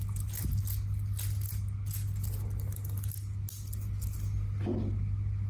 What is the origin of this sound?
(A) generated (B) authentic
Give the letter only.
B